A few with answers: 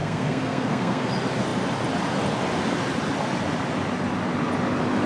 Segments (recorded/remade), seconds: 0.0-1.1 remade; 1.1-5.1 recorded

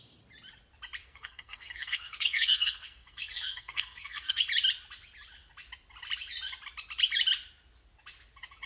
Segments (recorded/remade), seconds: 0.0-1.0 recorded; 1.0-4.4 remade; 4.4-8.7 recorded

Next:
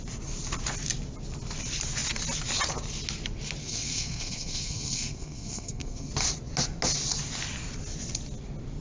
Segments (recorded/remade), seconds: 0.0-3.6 recorded; 3.6-6.1 remade; 6.1-8.8 recorded

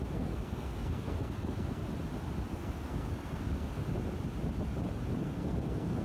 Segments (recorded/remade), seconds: 0.0-1.8 remade; 1.8-2.5 recorded; 2.5-3.8 remade; 3.8-5.2 recorded; 5.2-6.0 remade

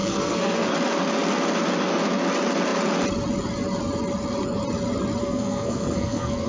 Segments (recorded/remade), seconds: 0.0-0.7 remade; 0.7-5.2 recorded; 5.2-6.5 remade

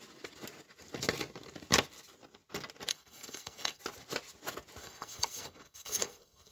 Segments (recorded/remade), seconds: 0.0-2.9 recorded; 2.9-3.8 remade; 3.8-4.8 recorded; 4.8-6.5 remade

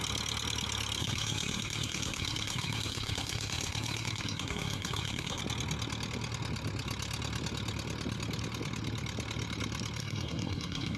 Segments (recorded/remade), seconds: 0.0-1.0 recorded; 1.0-5.4 remade; 5.4-10.0 recorded; 10.0-11.0 remade

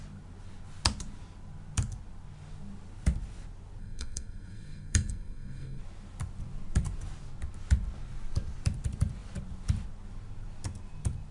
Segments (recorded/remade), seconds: 0.0-3.8 recorded; 3.8-5.8 remade; 5.8-11.3 recorded